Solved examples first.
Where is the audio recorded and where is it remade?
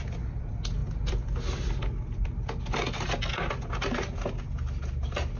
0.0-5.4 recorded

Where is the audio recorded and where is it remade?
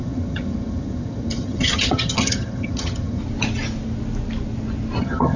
0.0-3.2 remade; 3.2-5.0 recorded; 5.0-5.4 remade